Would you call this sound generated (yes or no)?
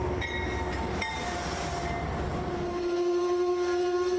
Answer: no